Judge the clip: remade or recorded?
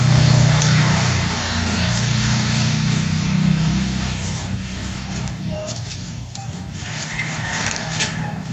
remade